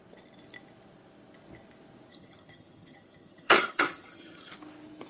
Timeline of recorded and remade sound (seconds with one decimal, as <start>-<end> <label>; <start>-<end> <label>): 0.0-2.1 recorded; 2.1-4.5 remade; 4.5-5.1 recorded

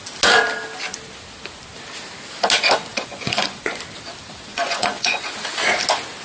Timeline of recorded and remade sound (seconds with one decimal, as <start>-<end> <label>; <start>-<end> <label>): 0.0-2.9 recorded; 2.9-3.8 remade; 3.8-4.5 recorded; 4.5-5.3 remade; 5.3-6.2 recorded

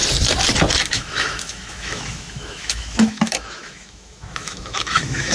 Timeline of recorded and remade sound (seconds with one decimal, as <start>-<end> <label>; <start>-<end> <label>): 0.0-0.9 recorded; 0.9-5.3 remade

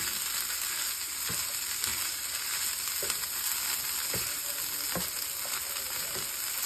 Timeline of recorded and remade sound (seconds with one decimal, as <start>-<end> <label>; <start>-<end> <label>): 0.0-6.7 recorded

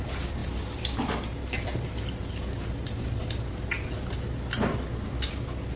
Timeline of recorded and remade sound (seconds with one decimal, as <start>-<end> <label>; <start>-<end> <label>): 0.0-5.8 recorded

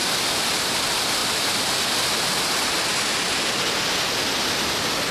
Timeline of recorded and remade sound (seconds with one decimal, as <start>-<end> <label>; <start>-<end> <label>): 0.0-5.1 recorded

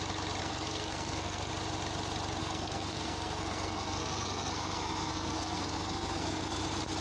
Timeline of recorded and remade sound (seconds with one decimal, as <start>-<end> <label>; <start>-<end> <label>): 0.0-0.4 recorded; 0.4-1.5 remade; 1.5-2.4 recorded; 2.4-6.6 remade; 6.6-7.0 recorded